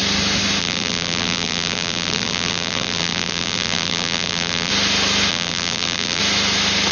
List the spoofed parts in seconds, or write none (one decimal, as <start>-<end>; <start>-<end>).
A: 0.6-4.7; 5.3-6.2